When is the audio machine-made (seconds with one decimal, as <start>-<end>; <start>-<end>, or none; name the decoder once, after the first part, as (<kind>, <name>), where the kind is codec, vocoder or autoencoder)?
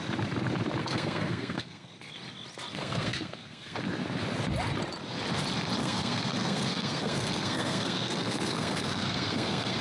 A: 0.8-1.9 (codec, SNAC); 2.7-3.8; 5.8-9.8